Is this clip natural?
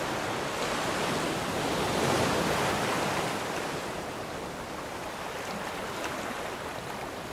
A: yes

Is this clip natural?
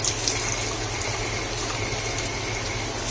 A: yes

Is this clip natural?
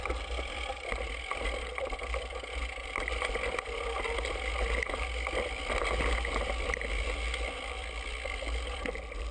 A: yes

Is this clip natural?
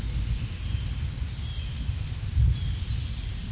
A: yes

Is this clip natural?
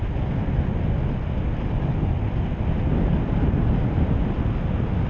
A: yes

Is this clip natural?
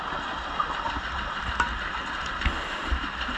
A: yes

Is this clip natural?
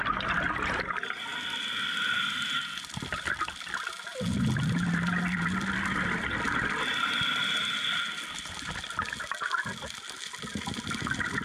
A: yes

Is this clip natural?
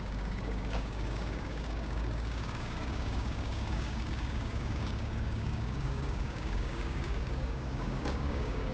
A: no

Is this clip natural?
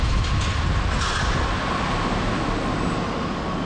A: yes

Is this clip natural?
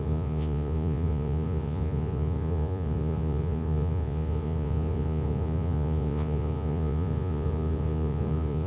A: no